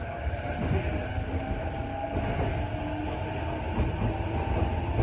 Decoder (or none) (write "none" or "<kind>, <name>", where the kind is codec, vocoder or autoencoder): none